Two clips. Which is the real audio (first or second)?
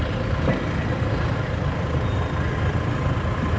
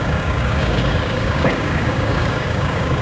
first